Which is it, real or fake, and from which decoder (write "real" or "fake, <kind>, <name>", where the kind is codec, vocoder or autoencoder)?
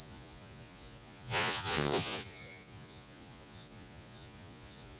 fake, vocoder, Vocos